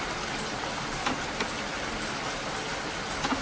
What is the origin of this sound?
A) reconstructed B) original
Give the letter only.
B